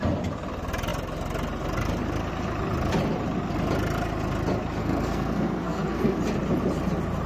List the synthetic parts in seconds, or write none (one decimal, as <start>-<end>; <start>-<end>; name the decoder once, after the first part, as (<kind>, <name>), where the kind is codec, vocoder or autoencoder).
4.8-6.2 (codec, SNAC)